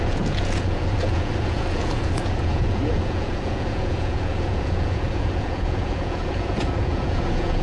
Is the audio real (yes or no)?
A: no